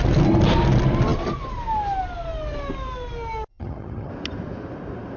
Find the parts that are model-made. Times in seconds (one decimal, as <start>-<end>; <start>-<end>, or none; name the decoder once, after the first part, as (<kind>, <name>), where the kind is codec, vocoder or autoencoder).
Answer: 3.5-4.1 (vocoder, HiFi-GAN)